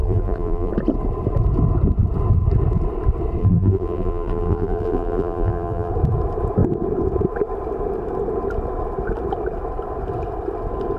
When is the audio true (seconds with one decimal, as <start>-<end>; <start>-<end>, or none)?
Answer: 0.7-3.4; 5.9-11.0